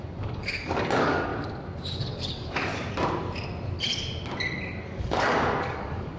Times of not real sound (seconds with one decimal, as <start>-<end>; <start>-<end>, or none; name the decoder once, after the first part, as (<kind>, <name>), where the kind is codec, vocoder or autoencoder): 0.0-1.3 (codec, DAC); 2.0-2.7; 4.8-6.2